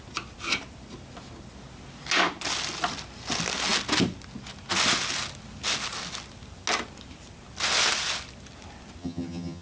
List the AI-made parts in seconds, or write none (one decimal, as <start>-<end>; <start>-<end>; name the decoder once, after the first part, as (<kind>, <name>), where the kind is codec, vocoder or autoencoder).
9.0-9.6 (vocoder, HiFi-GAN)